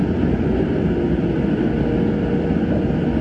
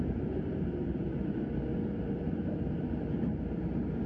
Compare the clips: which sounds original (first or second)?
first